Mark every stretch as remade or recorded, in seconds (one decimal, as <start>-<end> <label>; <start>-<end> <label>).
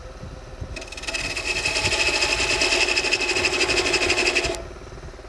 0.0-5.3 recorded